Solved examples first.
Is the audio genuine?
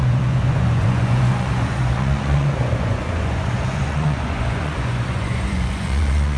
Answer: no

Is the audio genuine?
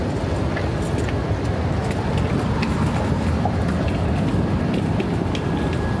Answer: yes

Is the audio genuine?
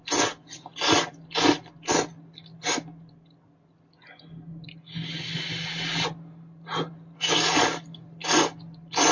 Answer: yes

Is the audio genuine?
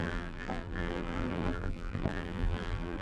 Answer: no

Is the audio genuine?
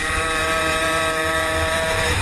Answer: no